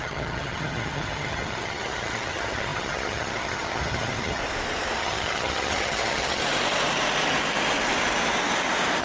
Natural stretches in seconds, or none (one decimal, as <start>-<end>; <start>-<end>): 4.4-5.0; 6.4-9.0